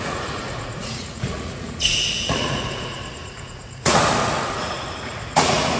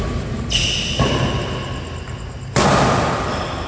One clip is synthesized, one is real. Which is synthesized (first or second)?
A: first